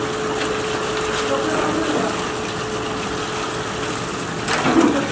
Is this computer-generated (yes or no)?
no